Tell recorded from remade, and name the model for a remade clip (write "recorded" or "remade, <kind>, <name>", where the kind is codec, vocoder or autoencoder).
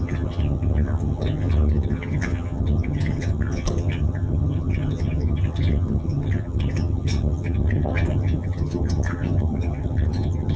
remade, vocoder, HiFi-GAN